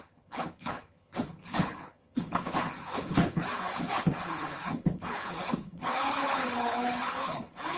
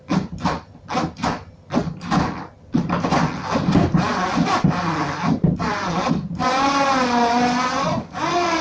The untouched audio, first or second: second